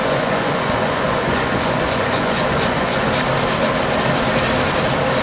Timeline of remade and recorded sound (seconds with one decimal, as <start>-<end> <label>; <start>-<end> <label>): 0.0-3.1 remade; 3.1-5.2 recorded